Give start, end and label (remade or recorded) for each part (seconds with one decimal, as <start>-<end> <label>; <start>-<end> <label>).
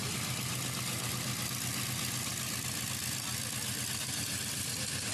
0.0-4.0 recorded; 4.0-5.1 remade